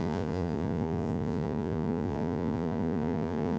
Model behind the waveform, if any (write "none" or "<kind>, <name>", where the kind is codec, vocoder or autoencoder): vocoder, Vocos